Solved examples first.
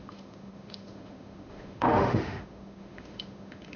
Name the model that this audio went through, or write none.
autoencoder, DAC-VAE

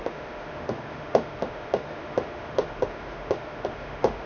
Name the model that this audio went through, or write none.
autoencoder, DAC-VAE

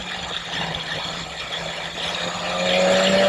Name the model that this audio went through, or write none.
none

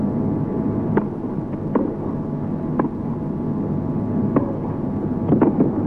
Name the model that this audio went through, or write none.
none